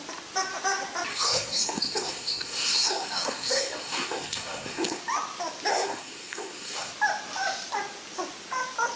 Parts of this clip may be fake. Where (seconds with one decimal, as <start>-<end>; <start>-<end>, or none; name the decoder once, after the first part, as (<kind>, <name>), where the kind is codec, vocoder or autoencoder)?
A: 1.1-5.0 (codec, SNAC); 5.7-6.9